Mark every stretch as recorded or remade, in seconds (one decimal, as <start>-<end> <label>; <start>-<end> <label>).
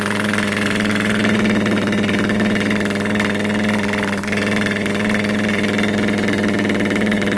0.0-7.4 recorded